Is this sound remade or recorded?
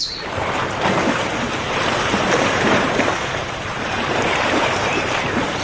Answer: remade